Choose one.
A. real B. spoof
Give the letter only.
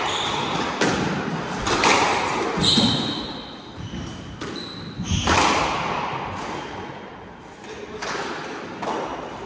A